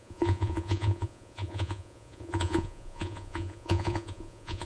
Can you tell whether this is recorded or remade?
remade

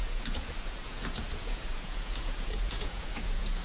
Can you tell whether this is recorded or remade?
remade